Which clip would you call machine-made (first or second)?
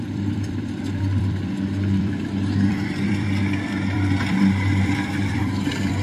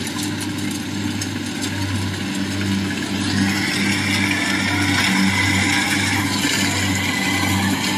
first